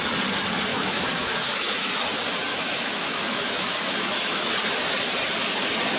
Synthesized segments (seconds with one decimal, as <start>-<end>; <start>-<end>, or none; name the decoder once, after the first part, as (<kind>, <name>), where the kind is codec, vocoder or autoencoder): 0.7-1.9 (autoencoder, DAC-VAE); 2.5-4.5